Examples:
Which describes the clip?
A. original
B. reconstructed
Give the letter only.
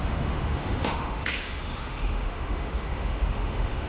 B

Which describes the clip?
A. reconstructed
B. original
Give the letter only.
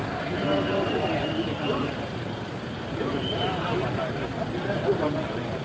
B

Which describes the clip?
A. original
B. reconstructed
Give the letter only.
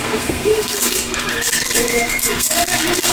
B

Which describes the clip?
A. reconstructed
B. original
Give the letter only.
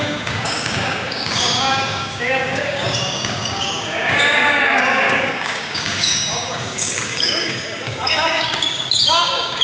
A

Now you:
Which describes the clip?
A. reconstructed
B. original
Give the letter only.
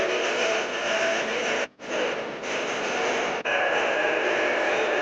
B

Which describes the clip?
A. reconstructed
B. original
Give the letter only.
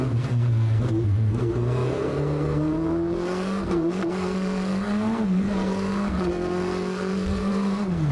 A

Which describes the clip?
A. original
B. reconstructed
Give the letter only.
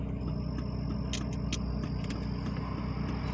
A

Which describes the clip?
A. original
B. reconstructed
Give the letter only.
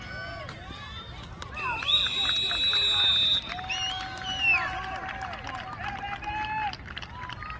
A